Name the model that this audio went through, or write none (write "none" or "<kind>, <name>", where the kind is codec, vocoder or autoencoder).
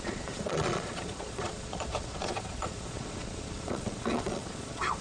vocoder, Vocos